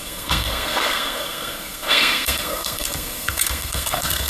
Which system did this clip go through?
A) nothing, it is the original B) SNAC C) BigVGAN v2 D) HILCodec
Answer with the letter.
B